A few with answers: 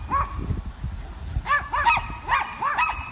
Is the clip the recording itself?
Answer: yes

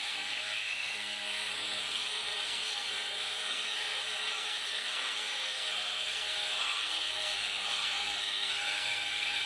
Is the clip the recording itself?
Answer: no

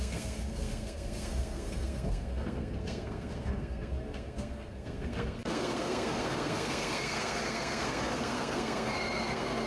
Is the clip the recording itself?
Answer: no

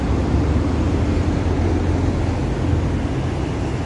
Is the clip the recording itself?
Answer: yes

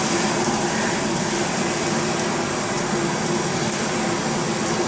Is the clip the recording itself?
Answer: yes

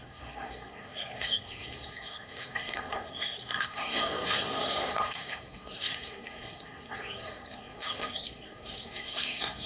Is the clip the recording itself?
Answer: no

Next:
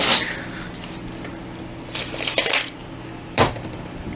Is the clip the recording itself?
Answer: yes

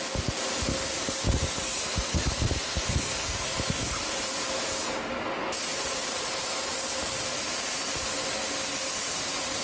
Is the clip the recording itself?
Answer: yes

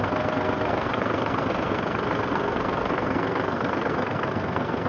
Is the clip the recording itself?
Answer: no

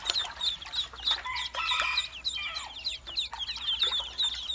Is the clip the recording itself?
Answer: yes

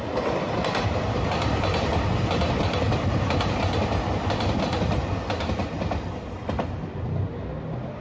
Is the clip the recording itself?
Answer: yes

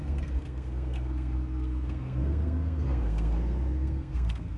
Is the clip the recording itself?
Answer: no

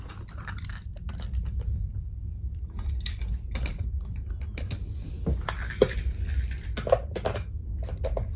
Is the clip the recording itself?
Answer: yes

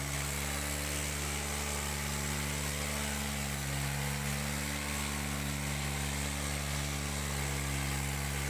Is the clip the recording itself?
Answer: yes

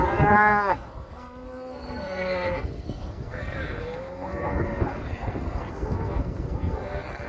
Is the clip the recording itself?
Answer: no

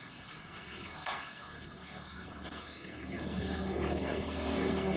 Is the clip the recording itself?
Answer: no